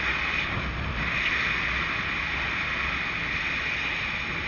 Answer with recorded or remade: recorded